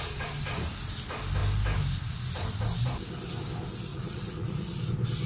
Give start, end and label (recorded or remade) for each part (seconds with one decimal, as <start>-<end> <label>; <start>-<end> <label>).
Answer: 0.0-3.9 recorded; 3.9-4.8 remade; 4.8-5.3 recorded